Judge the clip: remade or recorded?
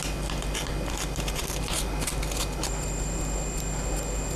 recorded